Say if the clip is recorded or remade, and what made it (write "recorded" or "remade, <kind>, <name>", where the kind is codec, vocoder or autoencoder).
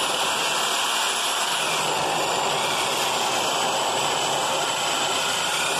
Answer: recorded